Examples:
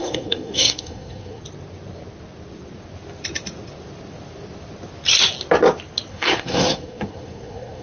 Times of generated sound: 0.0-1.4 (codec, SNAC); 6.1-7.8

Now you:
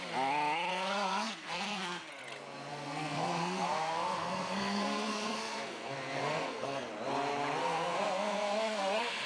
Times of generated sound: 0.7-2.1 (codec, SNAC); 2.7-6.9; 7.6-9.3

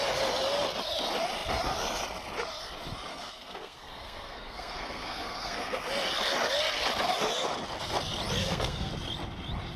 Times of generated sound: 3.1-5.9 (codec, SNAC); 8.4-8.9

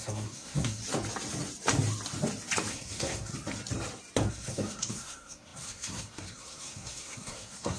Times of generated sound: 0.0-0.8 (codec, SNAC); 2.7-3.3; 4.3-7.8